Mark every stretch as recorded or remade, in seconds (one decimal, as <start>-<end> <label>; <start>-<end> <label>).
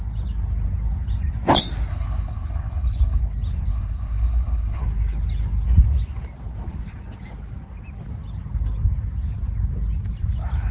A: 0.0-1.9 recorded; 1.9-3.2 remade; 3.2-3.7 recorded; 3.7-4.8 remade; 4.8-10.7 recorded